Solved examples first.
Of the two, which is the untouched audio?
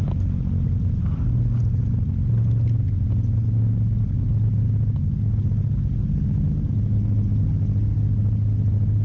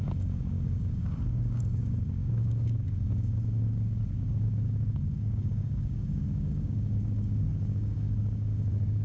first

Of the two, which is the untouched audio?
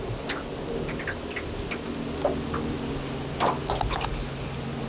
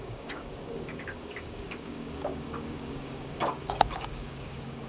first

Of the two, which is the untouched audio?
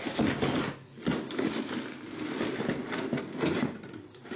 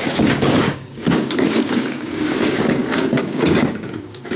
first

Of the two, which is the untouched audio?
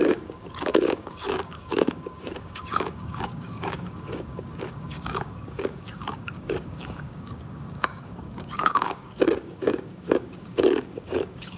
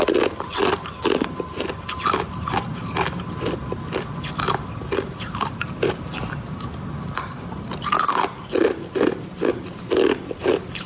second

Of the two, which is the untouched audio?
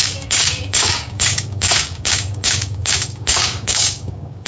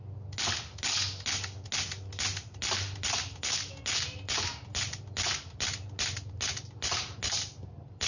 second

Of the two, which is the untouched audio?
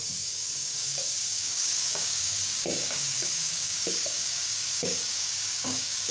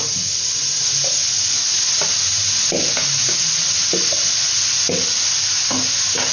second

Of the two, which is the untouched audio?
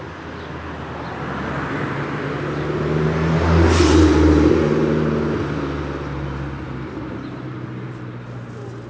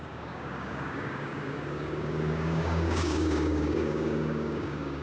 first